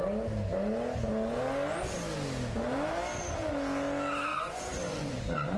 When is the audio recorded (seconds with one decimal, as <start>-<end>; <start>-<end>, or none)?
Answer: 0.0-4.3